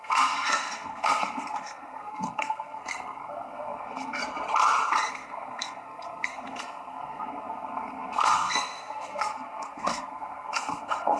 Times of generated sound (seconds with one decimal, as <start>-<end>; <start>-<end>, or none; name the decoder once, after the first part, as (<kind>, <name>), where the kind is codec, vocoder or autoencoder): 0.0-4.2 (codec, SNAC); 5.1-11.2